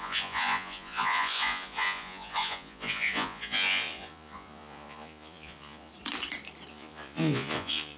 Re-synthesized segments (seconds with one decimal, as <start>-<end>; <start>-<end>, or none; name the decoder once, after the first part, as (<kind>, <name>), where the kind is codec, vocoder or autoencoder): 0.0-5.9 (vocoder, Vocos); 6.7-8.0